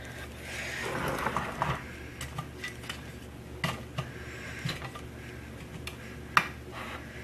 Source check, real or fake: real